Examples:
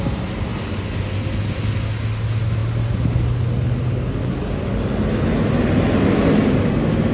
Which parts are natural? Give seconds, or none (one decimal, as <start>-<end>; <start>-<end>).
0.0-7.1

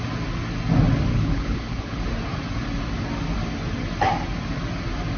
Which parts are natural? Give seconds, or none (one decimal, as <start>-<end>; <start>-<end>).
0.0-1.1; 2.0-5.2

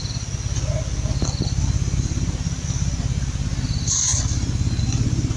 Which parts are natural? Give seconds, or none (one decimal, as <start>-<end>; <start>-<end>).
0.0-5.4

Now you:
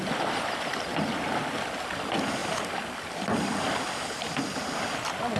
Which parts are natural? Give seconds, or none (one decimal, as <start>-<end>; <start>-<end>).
0.0-5.4